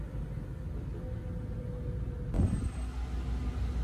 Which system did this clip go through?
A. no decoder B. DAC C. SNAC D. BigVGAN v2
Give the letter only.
A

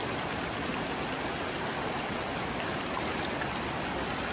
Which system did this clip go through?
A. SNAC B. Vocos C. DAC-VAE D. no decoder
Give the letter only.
D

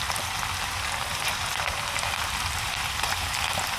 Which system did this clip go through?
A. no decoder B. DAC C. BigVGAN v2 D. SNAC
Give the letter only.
C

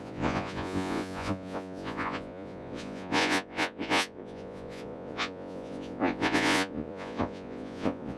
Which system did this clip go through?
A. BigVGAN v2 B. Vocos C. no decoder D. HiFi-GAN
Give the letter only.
B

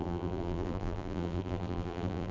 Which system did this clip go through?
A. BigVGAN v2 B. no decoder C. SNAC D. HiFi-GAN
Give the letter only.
A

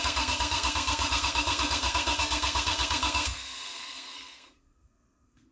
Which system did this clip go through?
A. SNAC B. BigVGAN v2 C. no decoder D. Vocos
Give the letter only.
A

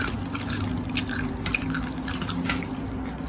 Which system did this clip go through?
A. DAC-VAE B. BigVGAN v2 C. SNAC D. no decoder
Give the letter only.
D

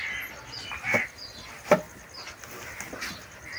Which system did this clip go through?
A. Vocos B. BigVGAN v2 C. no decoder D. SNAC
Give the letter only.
C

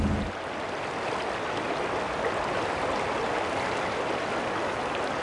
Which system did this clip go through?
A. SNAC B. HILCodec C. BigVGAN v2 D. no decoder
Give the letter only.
D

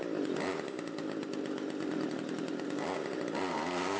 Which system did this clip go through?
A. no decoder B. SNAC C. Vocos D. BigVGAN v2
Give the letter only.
A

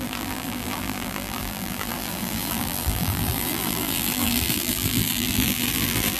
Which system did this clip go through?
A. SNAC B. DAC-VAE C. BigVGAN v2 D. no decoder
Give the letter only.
C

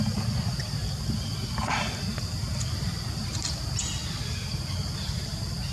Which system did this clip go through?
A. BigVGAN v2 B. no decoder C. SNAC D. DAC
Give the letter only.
A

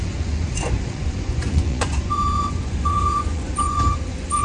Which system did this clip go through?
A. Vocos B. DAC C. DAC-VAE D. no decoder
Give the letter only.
A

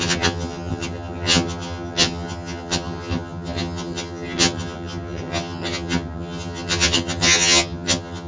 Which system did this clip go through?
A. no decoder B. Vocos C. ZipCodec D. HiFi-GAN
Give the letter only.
D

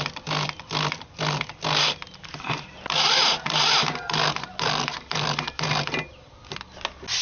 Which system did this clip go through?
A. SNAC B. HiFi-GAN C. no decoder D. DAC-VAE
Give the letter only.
C